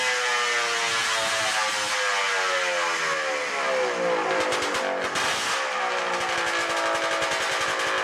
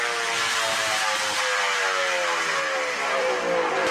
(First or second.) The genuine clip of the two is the first